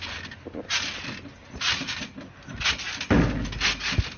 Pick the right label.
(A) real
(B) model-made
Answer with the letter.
A